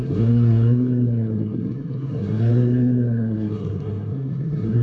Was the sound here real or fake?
fake